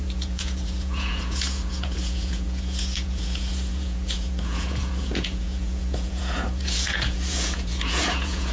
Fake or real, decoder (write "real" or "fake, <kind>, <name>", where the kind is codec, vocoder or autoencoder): fake, vocoder, Vocos